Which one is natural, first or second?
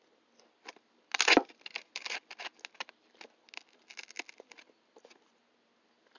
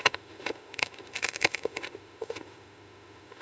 first